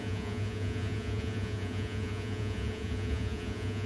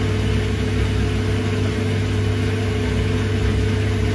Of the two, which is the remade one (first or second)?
first